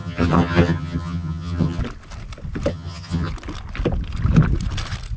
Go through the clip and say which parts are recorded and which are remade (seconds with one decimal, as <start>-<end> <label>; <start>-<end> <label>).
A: 0.0-1.8 remade; 1.8-2.7 recorded; 2.7-3.3 remade; 3.3-5.2 recorded